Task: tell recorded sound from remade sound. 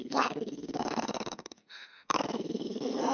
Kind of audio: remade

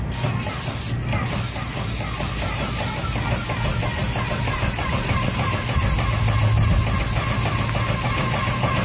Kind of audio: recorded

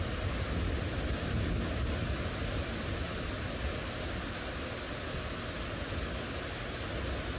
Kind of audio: recorded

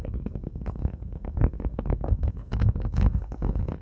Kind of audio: remade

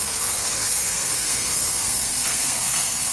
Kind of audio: remade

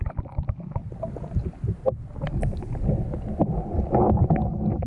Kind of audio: recorded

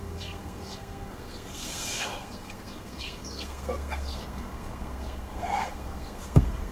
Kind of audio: remade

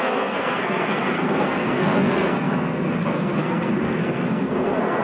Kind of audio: remade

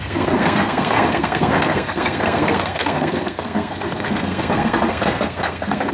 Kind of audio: remade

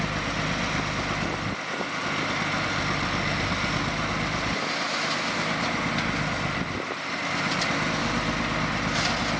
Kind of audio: recorded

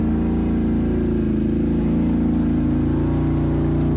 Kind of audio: recorded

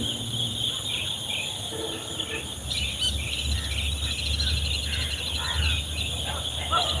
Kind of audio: recorded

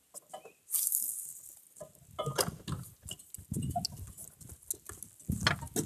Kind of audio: recorded